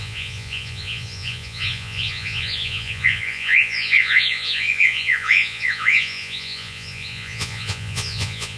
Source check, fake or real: fake